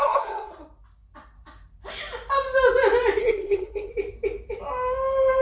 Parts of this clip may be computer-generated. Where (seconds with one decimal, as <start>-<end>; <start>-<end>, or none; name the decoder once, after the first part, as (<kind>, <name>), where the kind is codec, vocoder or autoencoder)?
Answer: 0.0-0.5 (codec, SNAC); 3.2-3.9